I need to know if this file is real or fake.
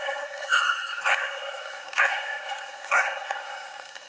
fake